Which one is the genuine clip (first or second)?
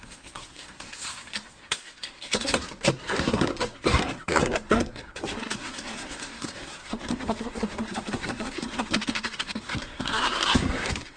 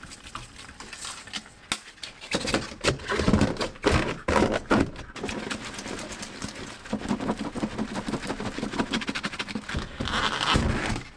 second